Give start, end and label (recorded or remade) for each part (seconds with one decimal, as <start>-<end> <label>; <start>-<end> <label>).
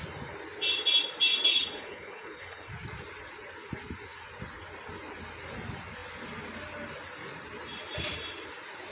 0.0-1.5 recorded; 1.5-2.7 remade; 2.7-8.9 recorded